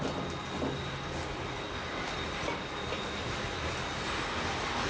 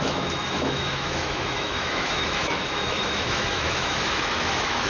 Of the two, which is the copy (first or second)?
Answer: second